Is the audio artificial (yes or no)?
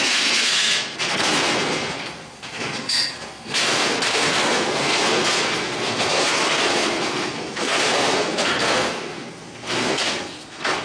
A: yes